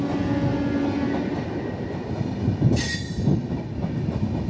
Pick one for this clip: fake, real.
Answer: real